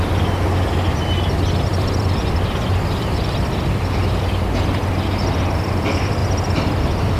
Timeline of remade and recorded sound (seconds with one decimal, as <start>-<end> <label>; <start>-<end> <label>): 0.0-1.7 recorded; 1.7-4.0 remade; 4.0-7.2 recorded